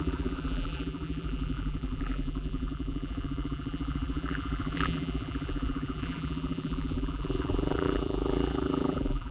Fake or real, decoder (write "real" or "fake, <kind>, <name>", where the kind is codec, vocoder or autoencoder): fake, vocoder, BigVGAN v2